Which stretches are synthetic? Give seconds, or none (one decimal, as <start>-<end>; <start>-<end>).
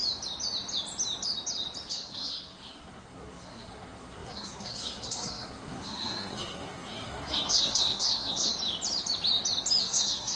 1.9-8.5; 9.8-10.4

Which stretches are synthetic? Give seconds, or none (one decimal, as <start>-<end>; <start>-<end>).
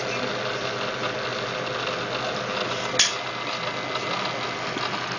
none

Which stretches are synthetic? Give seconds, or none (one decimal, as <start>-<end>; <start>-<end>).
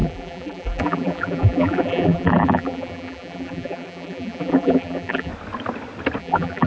0.0-5.3; 6.2-6.7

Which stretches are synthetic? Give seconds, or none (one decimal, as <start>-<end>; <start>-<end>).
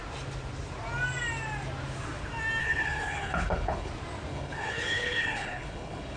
2.6-3.9; 4.3-6.2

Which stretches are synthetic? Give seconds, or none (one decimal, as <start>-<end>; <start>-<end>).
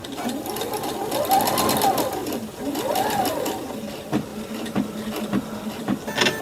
none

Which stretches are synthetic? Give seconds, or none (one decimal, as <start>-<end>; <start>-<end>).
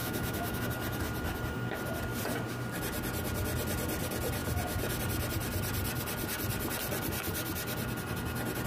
0.0-0.6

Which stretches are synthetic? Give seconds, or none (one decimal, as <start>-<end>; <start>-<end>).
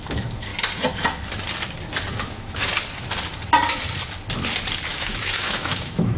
0.0-0.5; 2.2-2.7; 4.9-6.2